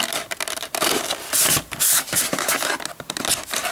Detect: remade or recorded recorded